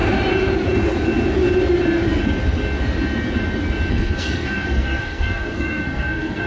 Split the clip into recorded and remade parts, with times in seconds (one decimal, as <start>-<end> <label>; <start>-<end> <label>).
0.0-3.9 recorded; 3.9-6.5 remade